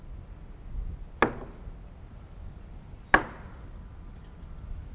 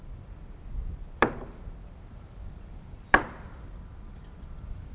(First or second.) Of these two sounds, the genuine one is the first